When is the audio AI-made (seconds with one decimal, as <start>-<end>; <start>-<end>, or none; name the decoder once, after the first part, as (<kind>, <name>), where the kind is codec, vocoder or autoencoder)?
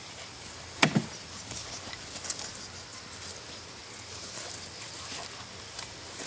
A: 0.0-1.6 (vocoder, BigVGAN v2); 5.4-6.3